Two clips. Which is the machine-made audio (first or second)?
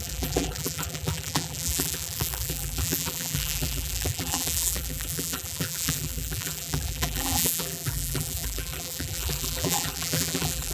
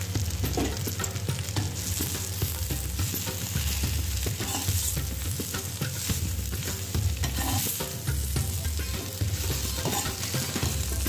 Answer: first